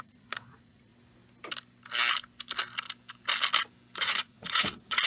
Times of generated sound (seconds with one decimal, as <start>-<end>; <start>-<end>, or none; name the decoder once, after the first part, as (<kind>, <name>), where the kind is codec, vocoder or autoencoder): 0.0-0.9 (vocoder, Vocos); 4.0-5.1